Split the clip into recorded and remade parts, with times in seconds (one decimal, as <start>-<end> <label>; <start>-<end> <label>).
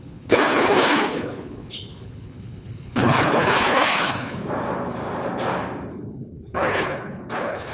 0.0-4.4 remade; 4.4-5.9 recorded; 5.9-7.7 remade